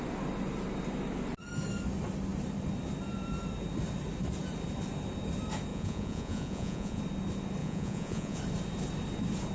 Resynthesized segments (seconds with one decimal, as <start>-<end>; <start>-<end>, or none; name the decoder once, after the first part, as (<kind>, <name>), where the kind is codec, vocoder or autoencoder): 5.7-7.0 (vocoder, Vocos); 7.6-8.4